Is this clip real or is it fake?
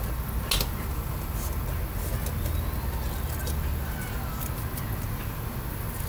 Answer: real